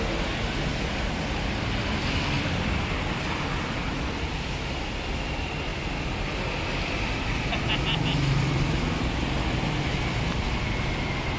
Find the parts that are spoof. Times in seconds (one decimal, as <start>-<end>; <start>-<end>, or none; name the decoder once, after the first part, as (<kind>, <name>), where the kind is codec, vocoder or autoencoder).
none